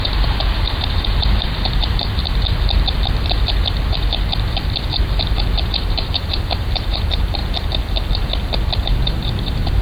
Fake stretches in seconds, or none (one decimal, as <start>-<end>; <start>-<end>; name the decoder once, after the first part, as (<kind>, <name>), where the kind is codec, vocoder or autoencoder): 0.0-2.2 (vocoder, BigVGAN v2); 5.7-7.4; 8.8-9.8